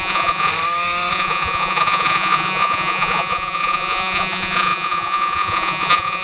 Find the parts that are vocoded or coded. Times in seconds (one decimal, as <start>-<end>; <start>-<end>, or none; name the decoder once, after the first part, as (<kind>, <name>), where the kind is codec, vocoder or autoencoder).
0.0-0.5 (vocoder, Vocos); 1.1-6.2